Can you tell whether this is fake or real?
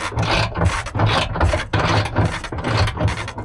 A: real